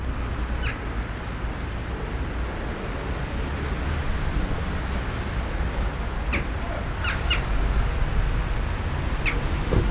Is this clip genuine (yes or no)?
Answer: yes